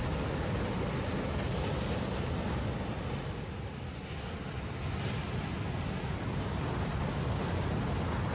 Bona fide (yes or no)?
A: yes